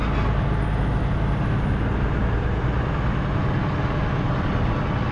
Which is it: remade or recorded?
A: recorded